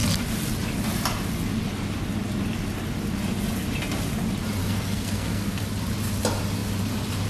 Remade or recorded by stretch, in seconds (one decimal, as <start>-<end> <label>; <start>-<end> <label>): 0.0-4.6 recorded; 4.6-5.6 remade; 5.6-7.3 recorded